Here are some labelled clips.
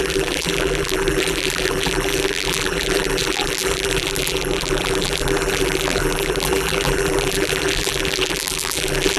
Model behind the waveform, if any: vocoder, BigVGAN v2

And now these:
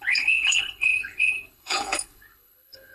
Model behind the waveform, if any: codec, HILCodec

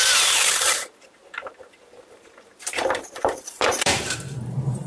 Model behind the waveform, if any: vocoder, BigVGAN v2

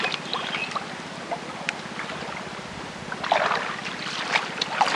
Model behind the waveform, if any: none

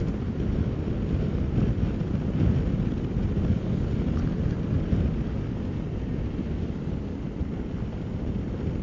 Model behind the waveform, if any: none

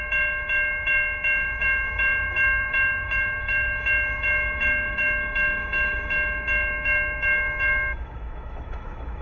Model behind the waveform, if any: autoencoder, DAC-VAE